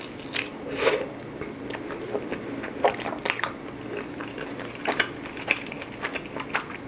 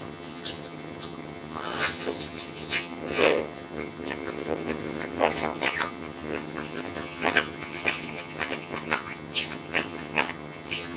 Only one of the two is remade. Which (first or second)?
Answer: second